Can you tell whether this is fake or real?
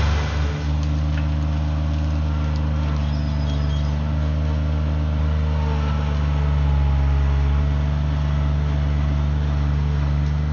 real